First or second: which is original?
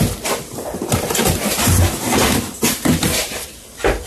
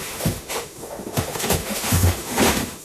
first